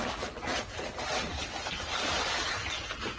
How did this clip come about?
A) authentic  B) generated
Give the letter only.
A